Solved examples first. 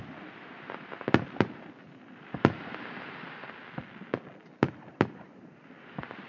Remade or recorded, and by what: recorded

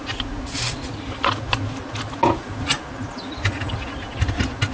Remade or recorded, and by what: recorded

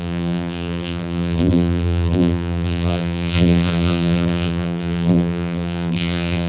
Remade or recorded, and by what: remade, vocoder, BigVGAN v2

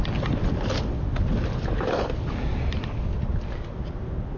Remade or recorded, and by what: recorded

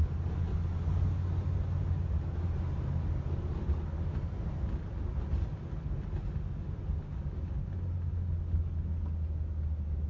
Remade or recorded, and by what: recorded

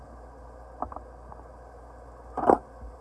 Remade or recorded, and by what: recorded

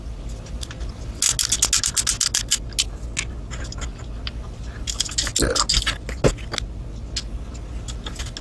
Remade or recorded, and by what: recorded